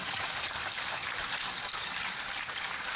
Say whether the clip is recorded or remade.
remade